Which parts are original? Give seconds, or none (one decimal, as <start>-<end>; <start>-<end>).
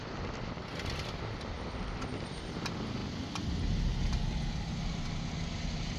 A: 0.0-6.0